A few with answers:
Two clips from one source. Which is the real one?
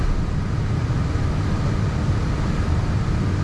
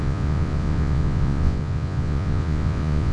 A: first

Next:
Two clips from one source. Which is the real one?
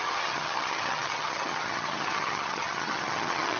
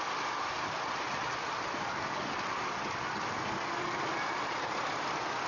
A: second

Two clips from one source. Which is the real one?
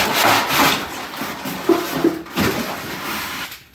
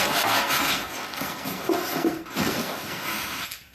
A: first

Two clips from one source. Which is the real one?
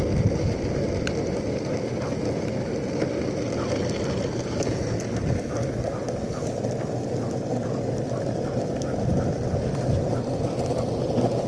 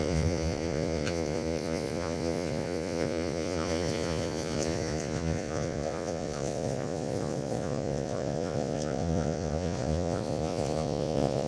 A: first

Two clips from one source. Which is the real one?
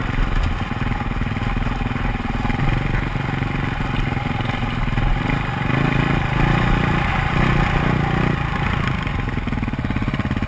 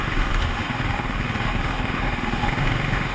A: first